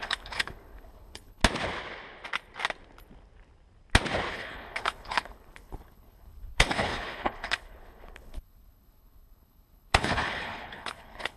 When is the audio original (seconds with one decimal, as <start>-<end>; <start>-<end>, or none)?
1.4-4.3